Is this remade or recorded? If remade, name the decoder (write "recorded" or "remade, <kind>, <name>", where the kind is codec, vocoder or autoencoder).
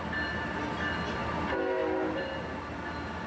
recorded